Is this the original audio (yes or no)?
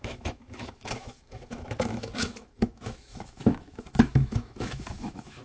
no